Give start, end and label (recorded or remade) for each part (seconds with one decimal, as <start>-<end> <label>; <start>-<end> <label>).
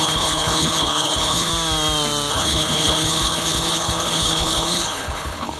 0.0-1.5 remade; 1.5-2.3 recorded; 2.3-5.6 remade